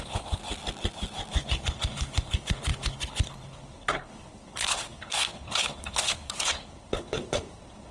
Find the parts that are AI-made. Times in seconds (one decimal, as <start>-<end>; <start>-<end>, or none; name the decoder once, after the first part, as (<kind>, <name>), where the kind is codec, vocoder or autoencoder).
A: 0.0-0.4 (codec, HILCodec); 1.3-7.9